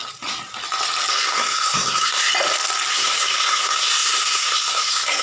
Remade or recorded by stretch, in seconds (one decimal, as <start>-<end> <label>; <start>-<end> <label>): 0.0-1.1 recorded; 1.1-2.3 remade; 2.3-2.9 recorded; 2.9-5.2 remade